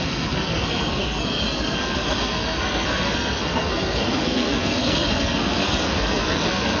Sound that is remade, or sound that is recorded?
remade